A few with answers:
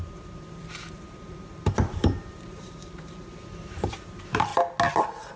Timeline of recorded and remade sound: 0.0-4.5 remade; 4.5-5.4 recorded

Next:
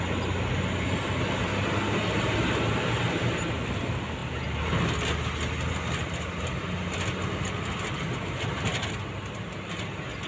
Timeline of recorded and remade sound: 0.0-10.3 recorded

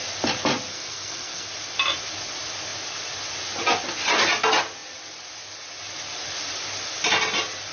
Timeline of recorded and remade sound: 0.0-0.7 recorded; 0.7-1.5 remade; 1.5-7.7 recorded